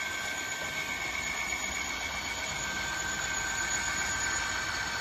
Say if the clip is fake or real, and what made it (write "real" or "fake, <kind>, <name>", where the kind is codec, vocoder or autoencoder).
real